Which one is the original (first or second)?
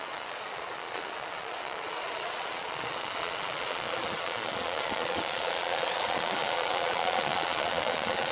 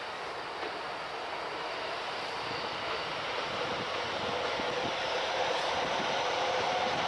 second